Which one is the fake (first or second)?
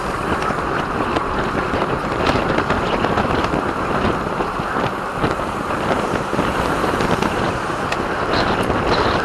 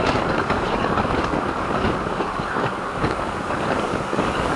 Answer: second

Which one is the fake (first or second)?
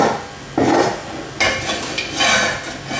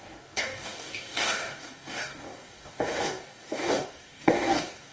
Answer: second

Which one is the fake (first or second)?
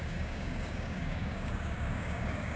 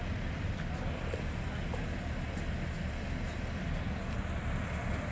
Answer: first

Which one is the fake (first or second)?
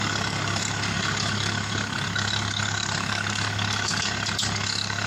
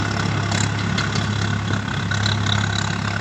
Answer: first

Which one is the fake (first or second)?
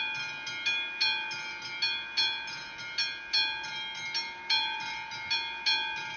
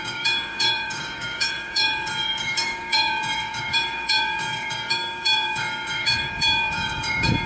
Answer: second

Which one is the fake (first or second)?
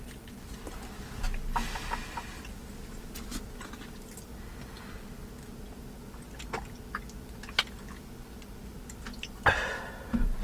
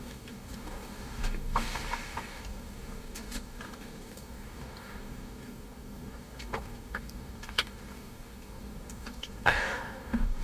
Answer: second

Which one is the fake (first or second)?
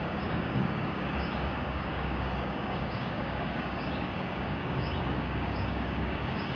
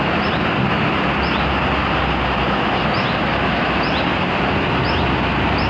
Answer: first